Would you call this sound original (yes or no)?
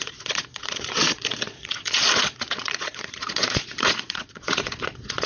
no